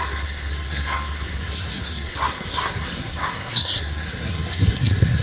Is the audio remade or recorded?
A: remade